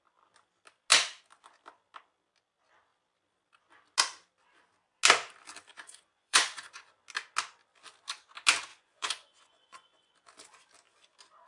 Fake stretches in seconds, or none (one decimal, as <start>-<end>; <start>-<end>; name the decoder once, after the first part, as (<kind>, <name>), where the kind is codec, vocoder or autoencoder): 5.7-6.9 (vocoder, Vocos); 8.7-10.1